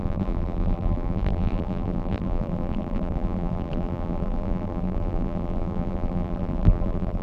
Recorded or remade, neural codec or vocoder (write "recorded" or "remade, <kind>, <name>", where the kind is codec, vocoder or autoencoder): remade, vocoder, BigVGAN v2